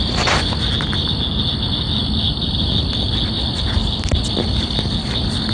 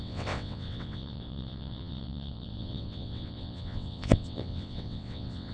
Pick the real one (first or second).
first